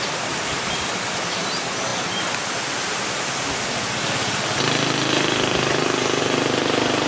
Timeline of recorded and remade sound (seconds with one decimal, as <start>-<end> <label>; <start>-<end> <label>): 0.0-7.1 recorded